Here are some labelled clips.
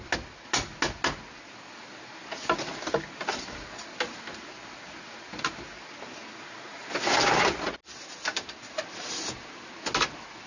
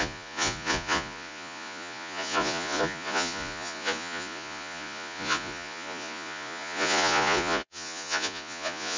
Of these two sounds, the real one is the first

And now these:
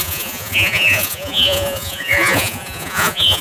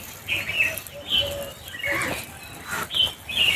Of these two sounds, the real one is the second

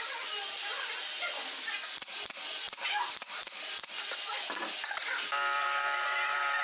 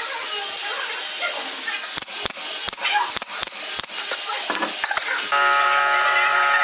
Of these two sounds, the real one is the second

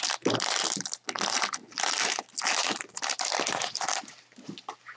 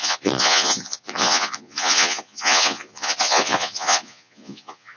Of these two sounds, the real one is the first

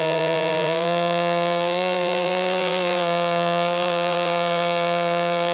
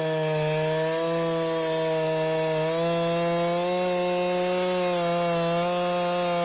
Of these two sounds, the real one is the second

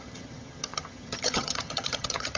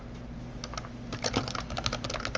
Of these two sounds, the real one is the second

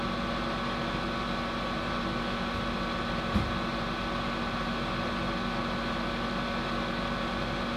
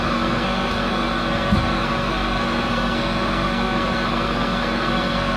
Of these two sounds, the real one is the first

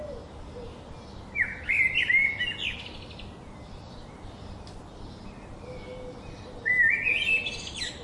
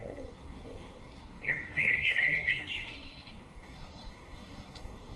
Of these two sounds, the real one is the first